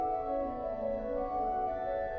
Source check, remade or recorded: recorded